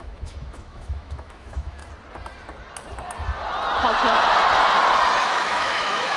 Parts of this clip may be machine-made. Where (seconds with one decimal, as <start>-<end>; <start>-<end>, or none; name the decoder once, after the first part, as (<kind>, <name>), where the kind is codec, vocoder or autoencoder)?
0.0-1.8 (autoencoder, DAC-VAE); 5.2-6.2